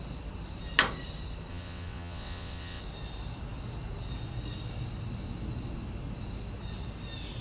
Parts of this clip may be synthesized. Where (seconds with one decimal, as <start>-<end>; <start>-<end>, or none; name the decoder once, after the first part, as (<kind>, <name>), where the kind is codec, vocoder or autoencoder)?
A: 1.5-2.8 (vocoder, WaveNeXt)